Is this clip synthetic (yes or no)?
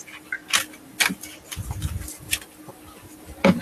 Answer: no